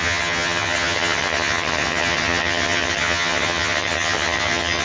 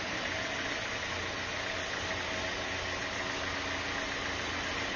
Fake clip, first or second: first